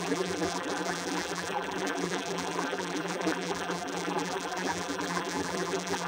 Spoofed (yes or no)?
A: yes